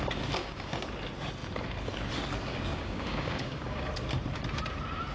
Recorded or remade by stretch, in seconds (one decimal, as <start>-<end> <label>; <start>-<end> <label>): 0.0-0.4 recorded; 0.4-0.9 remade; 0.9-2.5 recorded; 2.5-3.8 remade; 3.8-5.1 recorded